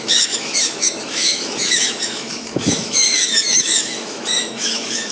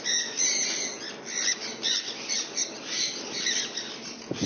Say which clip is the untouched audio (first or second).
second